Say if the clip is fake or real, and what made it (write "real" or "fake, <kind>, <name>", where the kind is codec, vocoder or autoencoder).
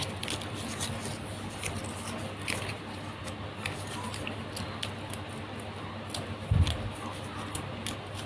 real